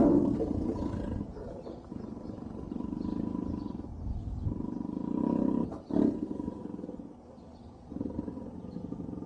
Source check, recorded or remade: recorded